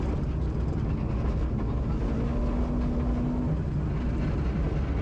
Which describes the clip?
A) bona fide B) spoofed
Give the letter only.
A